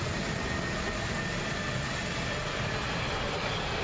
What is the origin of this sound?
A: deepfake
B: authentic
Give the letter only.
B